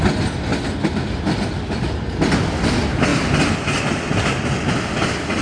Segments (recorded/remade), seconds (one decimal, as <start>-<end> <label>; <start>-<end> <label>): 0.0-5.4 recorded